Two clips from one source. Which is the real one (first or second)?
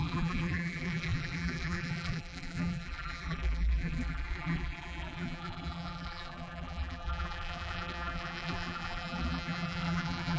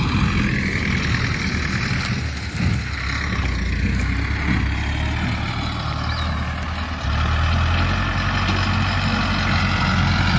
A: second